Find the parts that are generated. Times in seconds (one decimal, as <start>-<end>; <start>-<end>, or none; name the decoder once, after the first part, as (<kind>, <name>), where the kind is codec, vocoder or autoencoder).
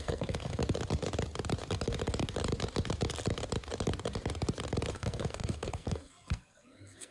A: 0.0-0.6 (codec, SNAC); 4.9-7.1